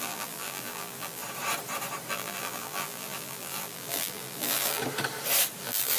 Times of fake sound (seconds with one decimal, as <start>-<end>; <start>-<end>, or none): 0.0-1.2; 2.1-4.8; 5.6-6.0